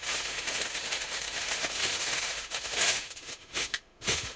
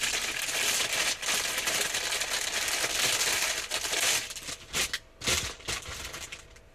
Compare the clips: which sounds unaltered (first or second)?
second